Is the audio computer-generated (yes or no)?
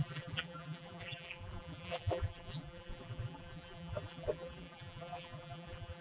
yes